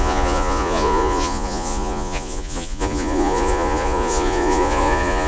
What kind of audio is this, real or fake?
fake